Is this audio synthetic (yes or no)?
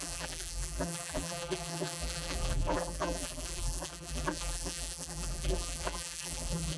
yes